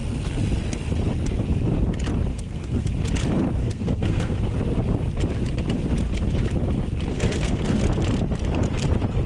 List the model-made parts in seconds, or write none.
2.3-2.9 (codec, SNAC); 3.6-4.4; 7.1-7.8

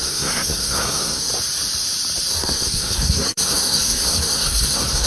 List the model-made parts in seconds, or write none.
0.0-1.3 (codec, SNAC); 2.3-5.1

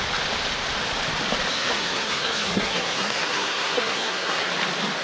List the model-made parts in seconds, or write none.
1.5-4.5 (codec, SNAC)

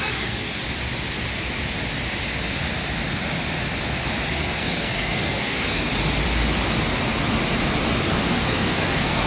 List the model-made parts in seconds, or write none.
0.0-0.6 (codec, SNAC); 4.3-5.9; 8.1-9.3